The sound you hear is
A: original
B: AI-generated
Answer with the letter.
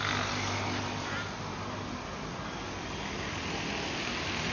A